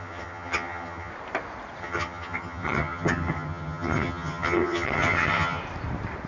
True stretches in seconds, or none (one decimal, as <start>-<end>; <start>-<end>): 1.1-1.8; 5.6-6.3